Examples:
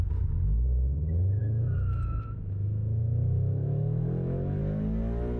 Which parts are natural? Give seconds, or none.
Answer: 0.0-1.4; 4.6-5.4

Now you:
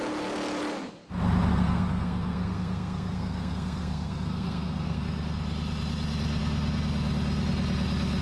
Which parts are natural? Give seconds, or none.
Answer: 0.0-1.5; 5.0-8.2

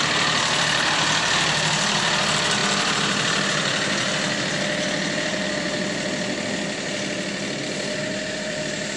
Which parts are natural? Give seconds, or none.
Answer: 2.6-7.6

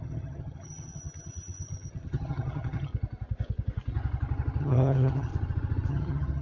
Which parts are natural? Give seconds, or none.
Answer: 2.9-4.6; 5.3-5.9

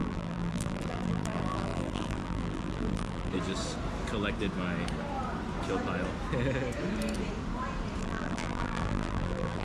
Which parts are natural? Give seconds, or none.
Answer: 3.3-8.0